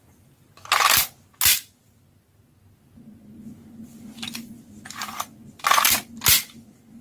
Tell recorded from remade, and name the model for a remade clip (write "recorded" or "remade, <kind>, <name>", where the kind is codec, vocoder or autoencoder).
recorded